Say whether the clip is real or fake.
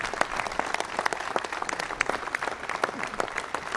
real